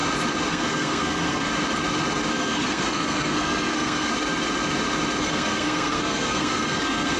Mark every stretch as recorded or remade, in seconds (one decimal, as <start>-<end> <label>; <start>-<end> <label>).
0.0-0.5 recorded; 0.5-1.5 remade; 1.5-2.3 recorded; 2.3-4.1 remade; 4.1-5.2 recorded; 5.2-7.2 remade